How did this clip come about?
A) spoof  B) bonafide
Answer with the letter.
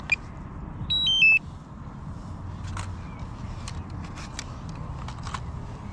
B